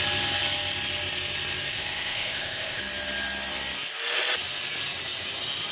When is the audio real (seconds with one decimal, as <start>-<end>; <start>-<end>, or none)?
0.0-1.7; 2.8-5.7